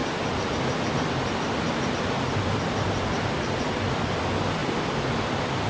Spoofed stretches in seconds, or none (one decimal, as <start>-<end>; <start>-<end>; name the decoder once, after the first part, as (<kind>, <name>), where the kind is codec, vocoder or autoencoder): none